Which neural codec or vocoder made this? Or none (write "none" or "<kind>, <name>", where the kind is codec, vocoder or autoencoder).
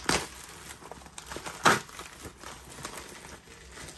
none